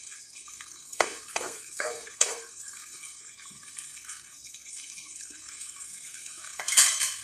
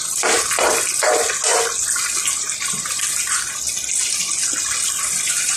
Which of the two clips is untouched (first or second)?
second